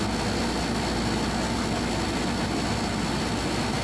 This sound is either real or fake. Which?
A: real